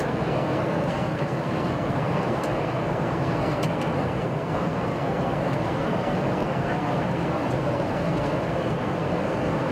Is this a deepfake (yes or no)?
yes